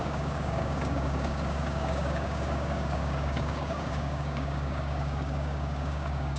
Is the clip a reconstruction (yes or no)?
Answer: yes